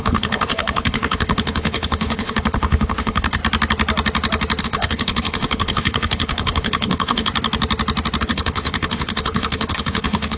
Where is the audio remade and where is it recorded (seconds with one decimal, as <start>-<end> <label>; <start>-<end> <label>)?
0.0-3.4 remade; 3.4-4.6 recorded; 4.6-7.3 remade; 7.3-8.2 recorded; 8.2-10.4 remade

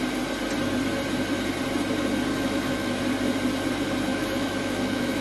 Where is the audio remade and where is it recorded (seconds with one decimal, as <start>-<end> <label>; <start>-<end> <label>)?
0.0-2.3 recorded; 2.3-3.0 remade; 3.0-4.1 recorded; 4.1-5.2 remade

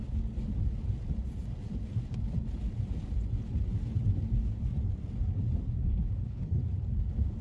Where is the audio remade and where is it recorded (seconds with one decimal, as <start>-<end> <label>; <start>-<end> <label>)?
0.0-5.8 recorded; 5.8-6.6 remade; 6.6-7.4 recorded

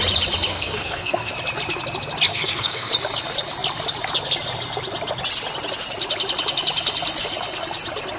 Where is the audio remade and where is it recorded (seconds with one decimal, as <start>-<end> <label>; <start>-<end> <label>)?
0.0-0.5 recorded; 0.5-1.3 remade; 1.3-2.3 recorded; 2.3-2.9 remade; 2.9-8.2 recorded

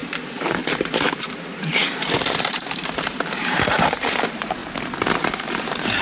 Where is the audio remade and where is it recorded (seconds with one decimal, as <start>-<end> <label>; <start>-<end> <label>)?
0.0-4.6 remade; 4.6-5.2 recorded; 5.2-6.0 remade

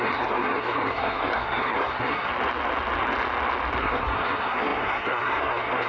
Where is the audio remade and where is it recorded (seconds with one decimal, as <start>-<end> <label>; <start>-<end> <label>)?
0.0-2.3 remade; 2.3-3.8 recorded; 3.8-5.9 remade

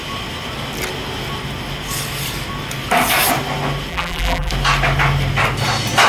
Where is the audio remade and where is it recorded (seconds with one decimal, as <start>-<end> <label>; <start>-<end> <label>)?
0.0-3.9 recorded; 3.9-4.5 remade; 4.5-6.1 recorded